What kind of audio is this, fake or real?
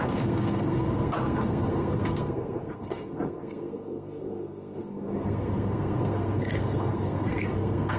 fake